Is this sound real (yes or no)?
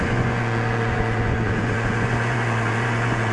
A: no